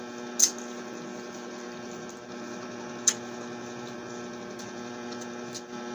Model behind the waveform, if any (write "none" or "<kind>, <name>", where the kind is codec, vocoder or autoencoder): none